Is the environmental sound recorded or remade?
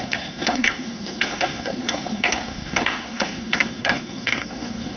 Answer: remade